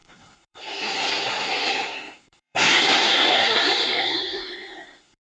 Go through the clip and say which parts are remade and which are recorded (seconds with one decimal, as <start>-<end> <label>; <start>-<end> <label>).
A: 0.0-5.3 remade